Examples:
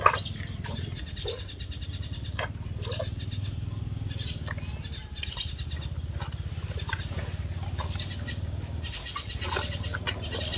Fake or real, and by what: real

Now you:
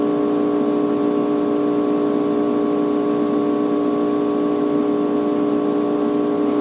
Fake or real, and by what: real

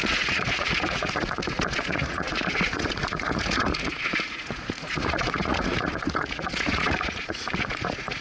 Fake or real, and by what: fake, vocoder, Vocos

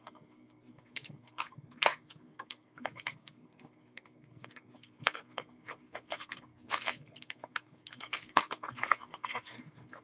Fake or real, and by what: fake, codec, SNAC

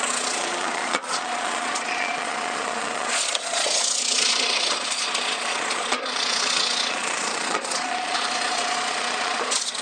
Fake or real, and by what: fake, vocoder, Vocos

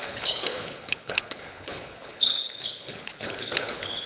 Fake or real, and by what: fake, codec, HILCodec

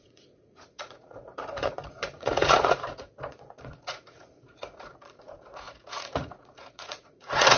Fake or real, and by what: fake, vocoder, Vocos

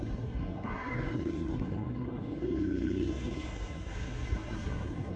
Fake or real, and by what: fake, codec, SNAC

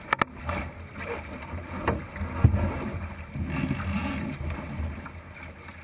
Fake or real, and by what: real